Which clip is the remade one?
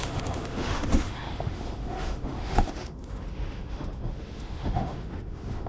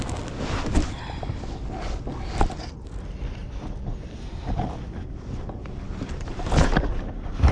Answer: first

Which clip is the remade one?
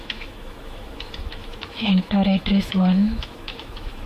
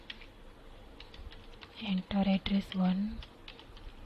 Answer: first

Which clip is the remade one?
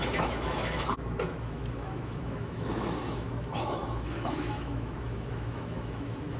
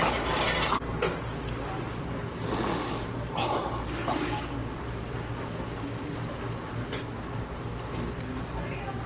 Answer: first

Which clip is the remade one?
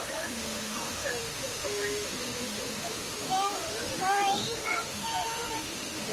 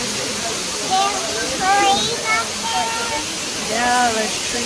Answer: first